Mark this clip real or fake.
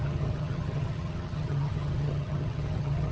fake